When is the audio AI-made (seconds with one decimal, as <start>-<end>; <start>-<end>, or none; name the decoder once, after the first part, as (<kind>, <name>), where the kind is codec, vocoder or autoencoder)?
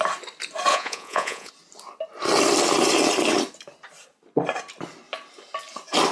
0.7-1.5 (vocoder, Vocos)